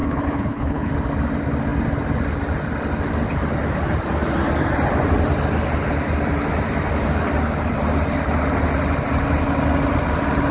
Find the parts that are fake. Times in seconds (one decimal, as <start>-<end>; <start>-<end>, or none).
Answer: 0.0-0.9